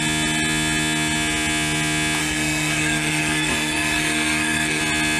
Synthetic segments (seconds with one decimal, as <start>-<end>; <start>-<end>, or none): 2.2-4.8